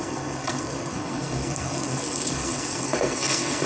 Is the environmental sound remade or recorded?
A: remade